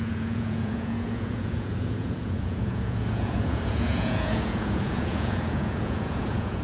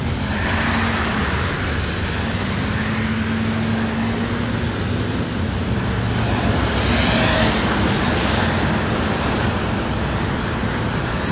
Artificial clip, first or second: first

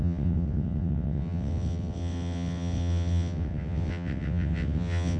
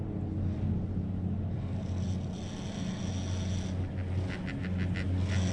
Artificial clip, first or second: first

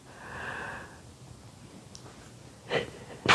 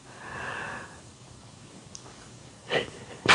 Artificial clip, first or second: second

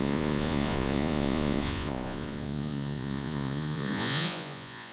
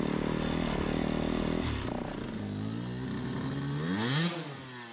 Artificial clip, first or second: first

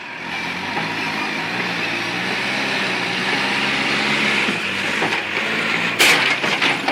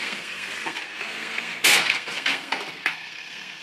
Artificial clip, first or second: second